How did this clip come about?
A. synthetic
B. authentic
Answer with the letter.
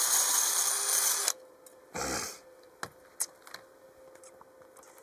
B